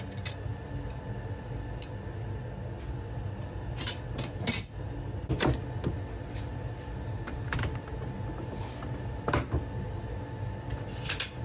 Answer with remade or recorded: recorded